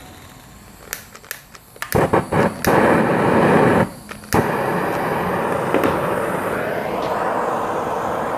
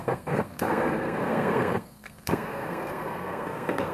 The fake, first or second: second